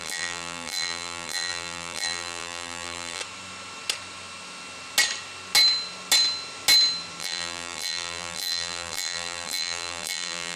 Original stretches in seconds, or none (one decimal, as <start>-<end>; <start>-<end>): 3.2-7.2